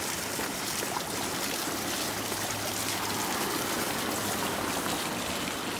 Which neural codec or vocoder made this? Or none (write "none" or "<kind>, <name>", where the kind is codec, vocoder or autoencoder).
none